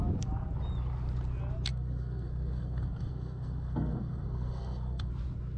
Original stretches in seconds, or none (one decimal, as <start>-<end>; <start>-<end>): 0.0-1.7; 5.1-5.6